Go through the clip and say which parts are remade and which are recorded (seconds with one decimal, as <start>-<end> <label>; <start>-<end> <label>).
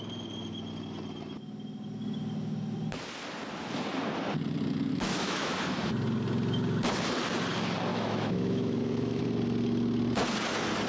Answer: 0.0-4.9 recorded; 4.9-5.6 remade; 5.6-7.9 recorded; 7.9-9.2 remade; 9.2-10.9 recorded